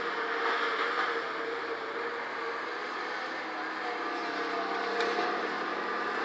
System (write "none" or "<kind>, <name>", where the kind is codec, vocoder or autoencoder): none